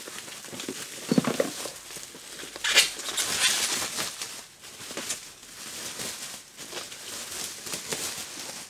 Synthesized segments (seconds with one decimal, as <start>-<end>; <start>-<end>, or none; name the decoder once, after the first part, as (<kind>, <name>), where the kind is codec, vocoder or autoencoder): none